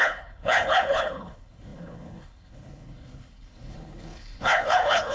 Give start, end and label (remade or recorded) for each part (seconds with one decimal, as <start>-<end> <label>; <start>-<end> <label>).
0.0-5.1 remade